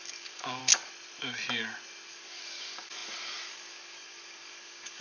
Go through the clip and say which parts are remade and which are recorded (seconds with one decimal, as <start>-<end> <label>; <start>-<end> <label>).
0.0-0.6 remade; 0.6-2.1 recorded; 2.1-5.0 remade